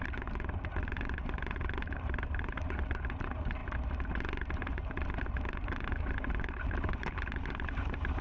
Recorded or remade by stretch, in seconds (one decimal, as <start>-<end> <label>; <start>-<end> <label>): 0.0-3.6 remade; 3.6-5.5 recorded; 5.5-8.2 remade